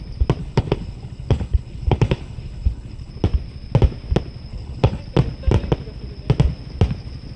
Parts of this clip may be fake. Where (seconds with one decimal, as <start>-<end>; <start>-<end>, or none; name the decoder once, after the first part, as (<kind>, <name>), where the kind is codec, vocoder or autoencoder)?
0.4-3.1 (codec, HILCodec); 4.5-5.0